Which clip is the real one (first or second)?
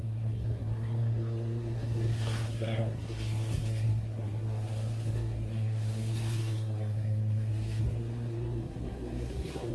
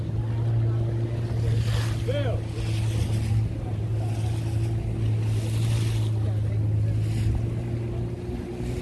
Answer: second